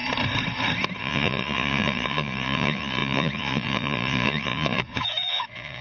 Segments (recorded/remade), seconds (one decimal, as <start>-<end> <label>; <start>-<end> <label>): 0.0-1.0 recorded; 1.0-5.8 remade